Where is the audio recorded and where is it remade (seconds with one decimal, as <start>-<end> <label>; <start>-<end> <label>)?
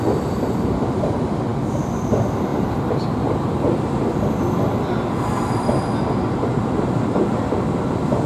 0.0-8.3 recorded